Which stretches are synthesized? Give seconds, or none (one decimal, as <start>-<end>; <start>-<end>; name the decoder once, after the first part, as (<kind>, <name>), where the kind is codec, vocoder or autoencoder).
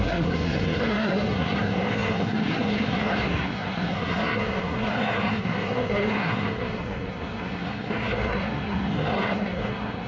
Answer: 0.0-10.1 (codec, SNAC)